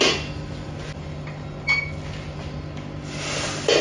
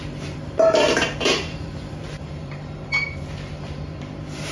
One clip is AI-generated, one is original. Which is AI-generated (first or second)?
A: second